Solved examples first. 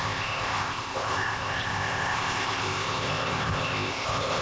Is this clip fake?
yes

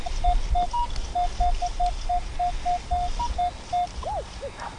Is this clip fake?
no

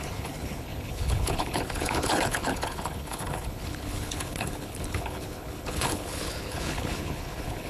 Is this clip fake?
yes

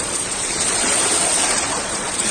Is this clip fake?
yes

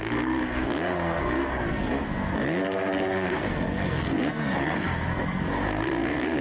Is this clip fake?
yes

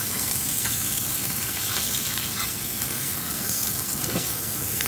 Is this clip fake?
yes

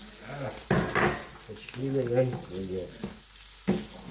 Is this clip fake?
no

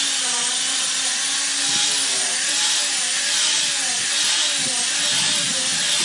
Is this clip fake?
no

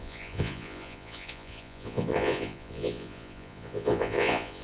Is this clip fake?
yes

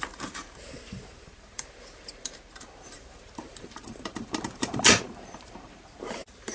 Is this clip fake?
yes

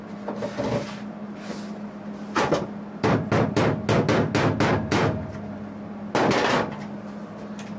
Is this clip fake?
no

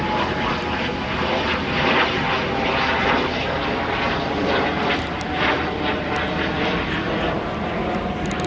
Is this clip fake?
no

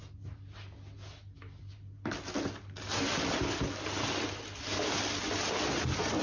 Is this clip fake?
no